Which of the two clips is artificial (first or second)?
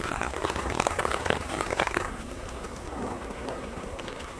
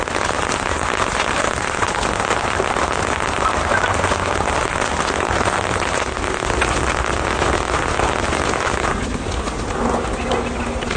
first